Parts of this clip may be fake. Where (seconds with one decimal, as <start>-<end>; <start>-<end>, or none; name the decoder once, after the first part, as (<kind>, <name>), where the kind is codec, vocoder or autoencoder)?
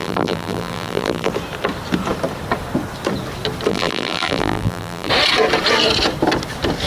0.0-1.3 (vocoder, BigVGAN v2); 3.7-5.1